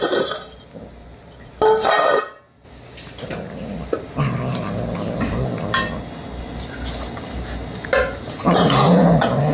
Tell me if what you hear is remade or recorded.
recorded